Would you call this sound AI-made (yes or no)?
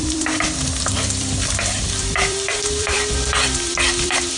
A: yes